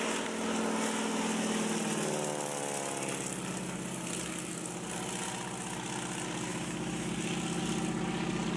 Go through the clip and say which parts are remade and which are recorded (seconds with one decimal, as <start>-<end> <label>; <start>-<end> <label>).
0.0-6.5 recorded; 6.5-7.1 remade; 7.1-8.6 recorded